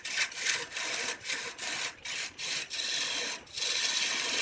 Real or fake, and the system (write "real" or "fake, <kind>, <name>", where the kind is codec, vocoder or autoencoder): real